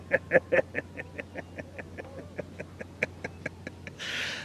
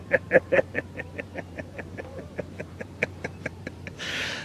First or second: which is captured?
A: first